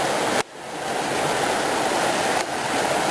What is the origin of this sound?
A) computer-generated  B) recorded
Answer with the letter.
B